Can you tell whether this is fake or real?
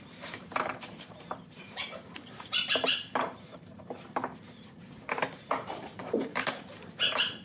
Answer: fake